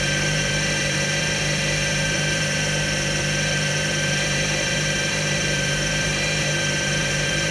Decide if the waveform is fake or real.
fake